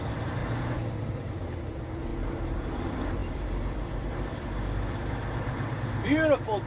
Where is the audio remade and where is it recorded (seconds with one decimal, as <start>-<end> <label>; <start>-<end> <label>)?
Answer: 0.0-0.4 remade; 0.4-1.3 recorded; 1.3-2.1 remade; 2.1-2.7 recorded; 2.7-6.7 remade